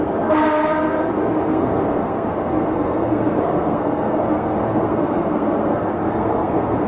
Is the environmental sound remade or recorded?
remade